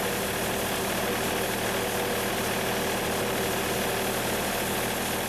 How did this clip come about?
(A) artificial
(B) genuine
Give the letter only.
B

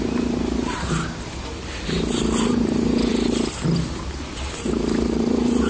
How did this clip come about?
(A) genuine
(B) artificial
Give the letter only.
A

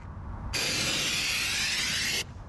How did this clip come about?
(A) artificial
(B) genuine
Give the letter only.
B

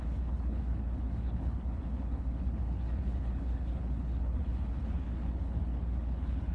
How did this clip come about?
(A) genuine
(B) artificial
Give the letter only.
B